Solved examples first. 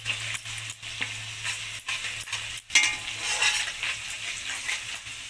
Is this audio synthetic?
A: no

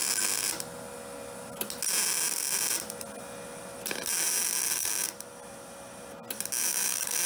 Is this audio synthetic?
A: no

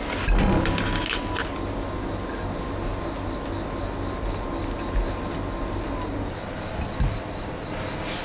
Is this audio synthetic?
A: no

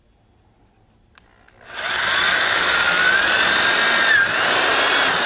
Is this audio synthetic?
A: no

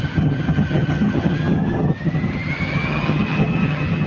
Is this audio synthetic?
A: yes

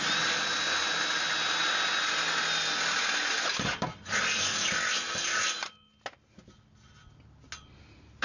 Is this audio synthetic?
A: no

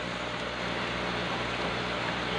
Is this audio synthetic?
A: no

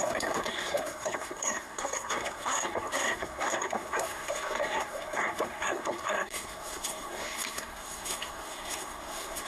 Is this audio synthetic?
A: yes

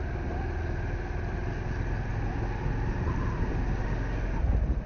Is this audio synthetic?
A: no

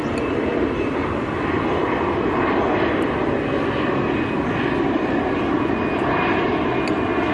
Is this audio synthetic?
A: no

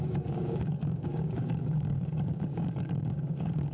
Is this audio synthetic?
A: yes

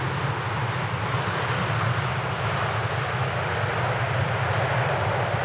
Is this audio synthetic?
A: no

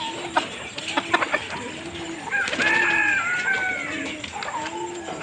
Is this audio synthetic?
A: no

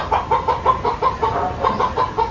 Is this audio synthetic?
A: no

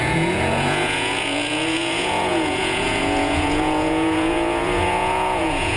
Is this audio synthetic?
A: yes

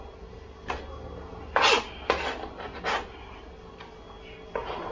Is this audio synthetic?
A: no